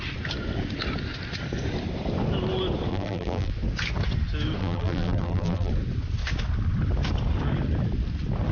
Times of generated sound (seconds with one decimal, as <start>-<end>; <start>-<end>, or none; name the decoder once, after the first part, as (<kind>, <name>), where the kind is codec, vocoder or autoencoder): 2.9-3.5 (vocoder, BigVGAN v2); 4.6-5.7